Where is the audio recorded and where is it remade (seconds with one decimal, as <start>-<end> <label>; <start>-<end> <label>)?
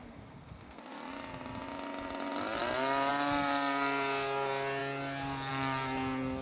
0.0-0.8 remade; 0.8-6.4 recorded